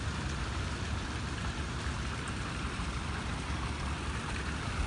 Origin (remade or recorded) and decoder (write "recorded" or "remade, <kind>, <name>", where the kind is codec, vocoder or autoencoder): recorded